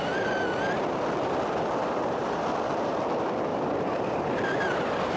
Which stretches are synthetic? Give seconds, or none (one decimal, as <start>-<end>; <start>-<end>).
1.8-3.0; 3.5-4.3